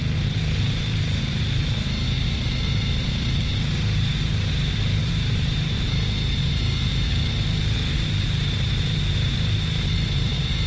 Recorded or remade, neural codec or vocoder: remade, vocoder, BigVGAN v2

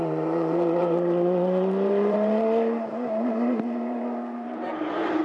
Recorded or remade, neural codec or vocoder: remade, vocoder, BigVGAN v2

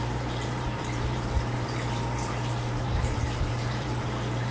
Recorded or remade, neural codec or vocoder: remade, vocoder, BigVGAN v2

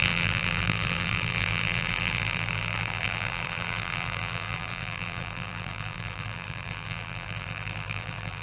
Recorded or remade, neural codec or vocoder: remade, vocoder, BigVGAN v2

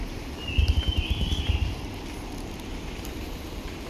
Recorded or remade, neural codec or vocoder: recorded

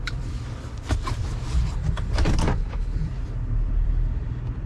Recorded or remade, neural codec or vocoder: remade, vocoder, BigVGAN v2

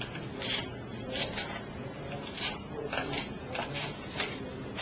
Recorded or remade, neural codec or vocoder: remade, vocoder, BigVGAN v2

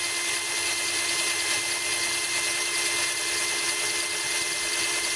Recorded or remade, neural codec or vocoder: recorded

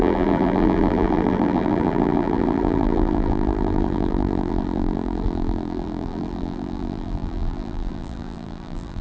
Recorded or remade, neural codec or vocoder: remade, vocoder, BigVGAN v2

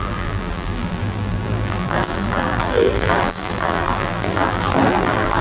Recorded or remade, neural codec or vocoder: remade, vocoder, BigVGAN v2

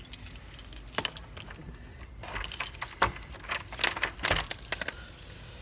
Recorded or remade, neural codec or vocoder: recorded